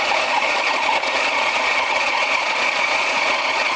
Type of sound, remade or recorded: remade